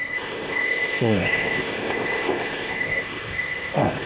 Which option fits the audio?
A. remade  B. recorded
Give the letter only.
A